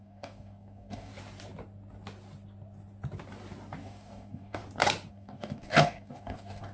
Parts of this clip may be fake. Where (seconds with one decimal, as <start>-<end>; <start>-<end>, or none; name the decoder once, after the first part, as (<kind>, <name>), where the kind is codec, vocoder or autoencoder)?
0.0-1.1 (codec, DAC); 3.8-4.6; 5.1-6.7